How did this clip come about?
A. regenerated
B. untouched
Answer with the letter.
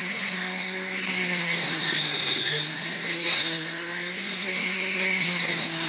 A